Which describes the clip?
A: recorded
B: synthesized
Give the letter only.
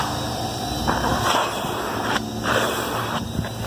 A